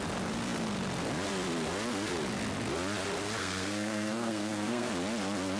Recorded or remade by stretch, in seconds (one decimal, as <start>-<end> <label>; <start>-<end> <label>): 0.0-3.4 recorded; 3.4-4.9 remade; 4.9-5.6 recorded